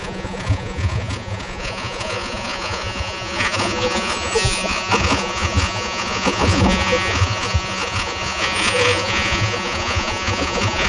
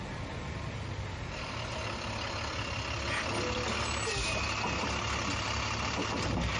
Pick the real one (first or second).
second